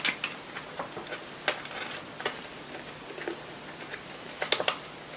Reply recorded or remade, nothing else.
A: recorded